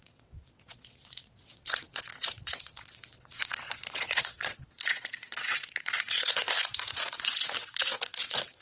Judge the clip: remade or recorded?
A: remade